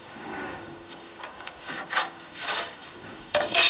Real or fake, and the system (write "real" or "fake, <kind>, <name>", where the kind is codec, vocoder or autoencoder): fake, codec, DAC